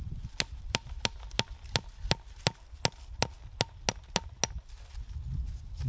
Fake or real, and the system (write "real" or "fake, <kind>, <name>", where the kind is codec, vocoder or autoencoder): real